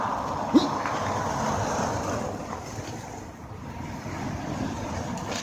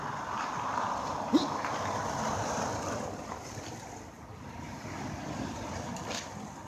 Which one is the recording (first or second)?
first